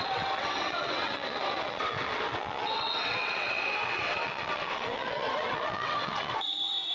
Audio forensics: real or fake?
fake